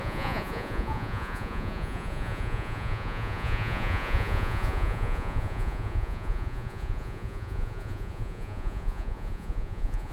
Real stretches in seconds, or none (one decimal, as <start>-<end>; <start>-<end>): none